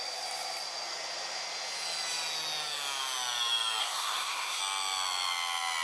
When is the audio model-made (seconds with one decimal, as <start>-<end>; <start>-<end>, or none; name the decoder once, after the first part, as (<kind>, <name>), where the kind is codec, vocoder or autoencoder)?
3.8-4.6 (codec, SNAC)